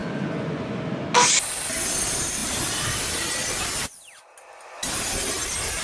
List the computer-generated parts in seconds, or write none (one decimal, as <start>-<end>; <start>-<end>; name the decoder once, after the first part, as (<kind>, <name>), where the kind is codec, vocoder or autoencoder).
0.0-0.8 (vocoder, Vocos)

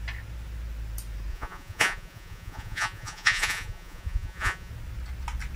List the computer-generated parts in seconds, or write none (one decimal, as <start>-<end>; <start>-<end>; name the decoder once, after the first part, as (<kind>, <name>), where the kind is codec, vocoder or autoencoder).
1.3-4.7 (vocoder, Vocos)